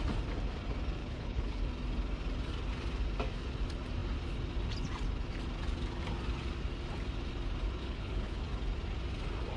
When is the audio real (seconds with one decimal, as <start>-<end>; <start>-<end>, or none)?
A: 0.0-1.0; 1.6-7.8; 8.4-9.6